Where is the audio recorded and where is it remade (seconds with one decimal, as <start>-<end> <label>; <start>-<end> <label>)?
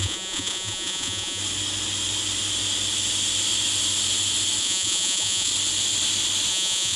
0.0-1.4 remade; 1.4-4.6 recorded; 4.6-5.5 remade; 5.5-6.5 recorded; 6.5-7.0 remade